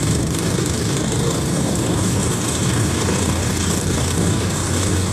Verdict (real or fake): fake